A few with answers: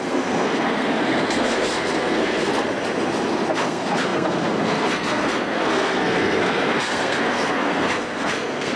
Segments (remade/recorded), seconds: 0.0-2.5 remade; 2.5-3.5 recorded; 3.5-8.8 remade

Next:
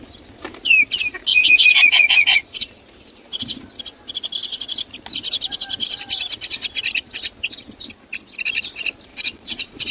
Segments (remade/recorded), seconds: 0.0-1.3 recorded; 1.3-2.8 remade; 2.8-9.1 recorded; 9.1-9.9 remade

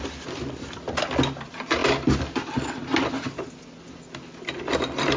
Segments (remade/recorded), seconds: 0.0-5.2 recorded

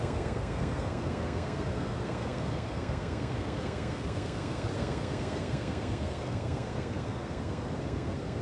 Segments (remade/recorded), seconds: 0.0-8.4 remade

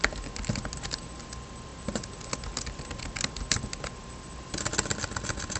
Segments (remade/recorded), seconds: 0.0-5.6 recorded

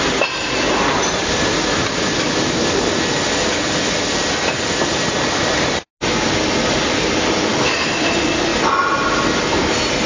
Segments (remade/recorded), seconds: 0.0-10.1 recorded

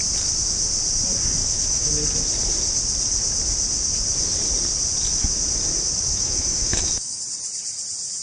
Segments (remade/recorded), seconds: 0.0-1.4 recorded; 1.4-1.9 remade; 1.9-6.1 recorded; 6.1-7.2 remade; 7.2-8.2 recorded

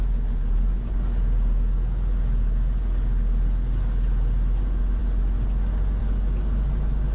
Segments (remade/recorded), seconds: 0.0-7.1 recorded